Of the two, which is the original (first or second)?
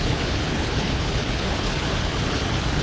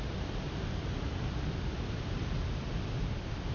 second